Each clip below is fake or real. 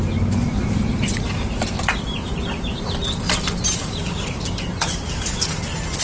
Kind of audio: real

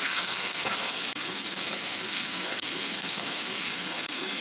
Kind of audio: fake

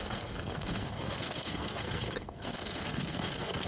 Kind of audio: fake